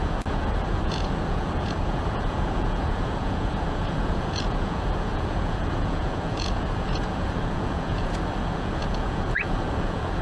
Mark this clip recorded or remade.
remade